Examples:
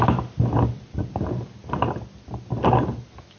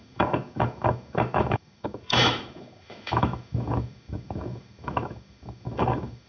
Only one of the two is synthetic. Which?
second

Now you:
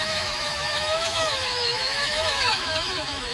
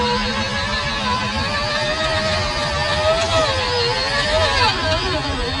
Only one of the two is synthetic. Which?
first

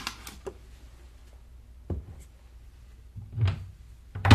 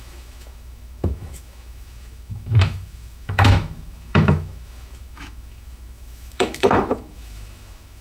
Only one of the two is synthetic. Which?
second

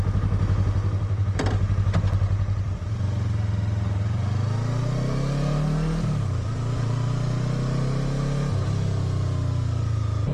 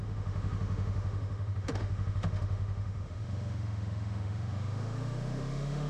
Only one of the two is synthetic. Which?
second